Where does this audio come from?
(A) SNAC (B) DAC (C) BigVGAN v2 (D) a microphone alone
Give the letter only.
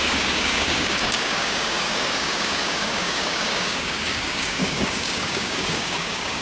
B